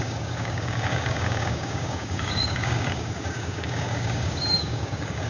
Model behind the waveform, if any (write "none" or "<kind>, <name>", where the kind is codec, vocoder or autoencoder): codec, DAC